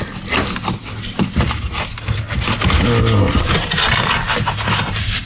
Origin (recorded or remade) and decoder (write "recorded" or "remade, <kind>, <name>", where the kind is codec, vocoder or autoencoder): recorded